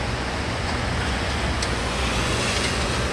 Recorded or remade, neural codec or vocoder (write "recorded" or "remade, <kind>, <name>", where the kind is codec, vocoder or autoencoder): remade, vocoder, Vocos